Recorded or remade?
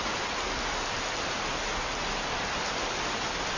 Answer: recorded